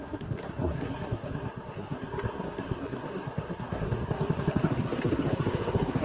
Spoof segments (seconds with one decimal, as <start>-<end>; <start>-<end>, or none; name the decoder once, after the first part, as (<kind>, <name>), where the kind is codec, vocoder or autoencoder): 0.0-6.0 (codec, SNAC)